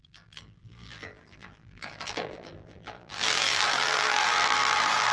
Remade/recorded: remade